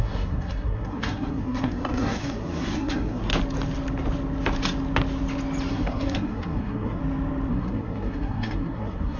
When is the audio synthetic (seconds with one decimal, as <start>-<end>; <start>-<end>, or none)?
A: 0.0-3.3; 5.7-7.0; 7.5-9.2